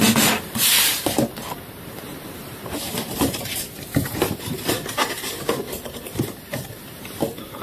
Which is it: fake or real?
fake